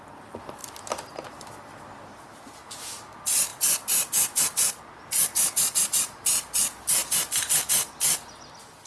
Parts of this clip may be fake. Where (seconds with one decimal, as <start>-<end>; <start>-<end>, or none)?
0.0-8.9